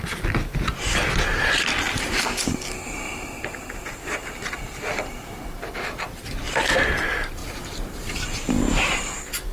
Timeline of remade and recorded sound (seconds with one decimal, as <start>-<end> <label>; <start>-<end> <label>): 0.0-7.4 recorded; 7.4-9.0 remade; 9.0-9.5 recorded